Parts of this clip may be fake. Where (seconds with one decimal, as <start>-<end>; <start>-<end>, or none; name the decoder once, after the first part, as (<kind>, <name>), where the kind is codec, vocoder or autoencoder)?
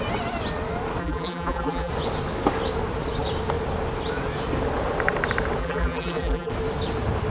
1.0-1.9 (vocoder, BigVGAN v2); 5.6-6.5